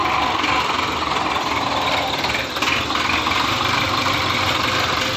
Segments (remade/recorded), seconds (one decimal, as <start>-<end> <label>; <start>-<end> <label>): 0.0-5.2 recorded